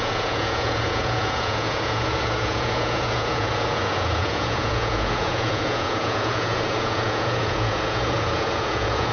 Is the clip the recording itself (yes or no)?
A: no